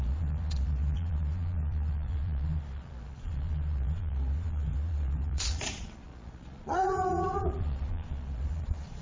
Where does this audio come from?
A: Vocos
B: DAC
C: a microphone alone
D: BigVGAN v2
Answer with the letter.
A